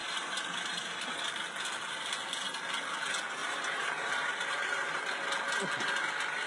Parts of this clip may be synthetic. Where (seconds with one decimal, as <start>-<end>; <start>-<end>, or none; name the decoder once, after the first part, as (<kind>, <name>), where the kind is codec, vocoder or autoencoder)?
0.0-1.2 (vocoder, BigVGAN v2); 3.4-5.1

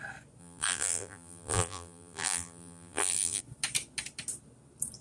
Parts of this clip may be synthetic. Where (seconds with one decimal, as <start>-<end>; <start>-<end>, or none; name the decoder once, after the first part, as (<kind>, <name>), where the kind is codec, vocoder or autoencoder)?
0.4-3.4 (vocoder, BigVGAN v2)